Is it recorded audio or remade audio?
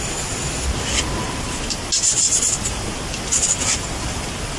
recorded